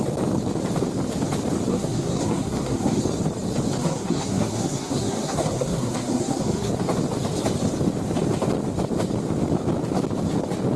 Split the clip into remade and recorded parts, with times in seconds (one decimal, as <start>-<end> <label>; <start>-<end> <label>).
0.0-1.7 recorded; 1.7-3.0 remade; 3.0-3.8 recorded; 3.8-6.7 remade; 6.7-10.8 recorded